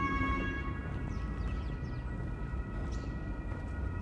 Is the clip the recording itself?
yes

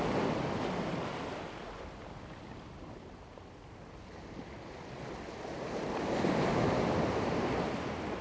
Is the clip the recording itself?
yes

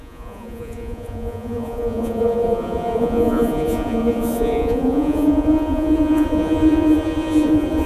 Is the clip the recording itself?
no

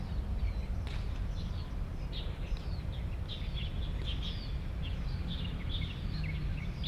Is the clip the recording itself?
yes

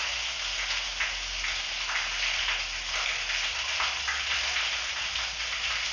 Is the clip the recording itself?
yes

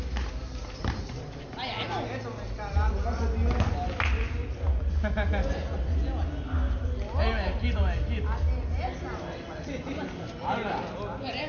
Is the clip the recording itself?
yes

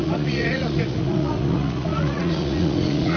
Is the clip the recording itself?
no